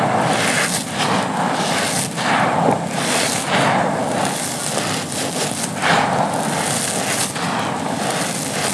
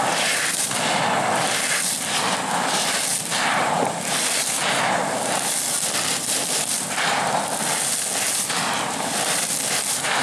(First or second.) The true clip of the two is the first